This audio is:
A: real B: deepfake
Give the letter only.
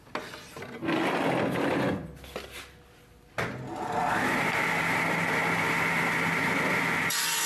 A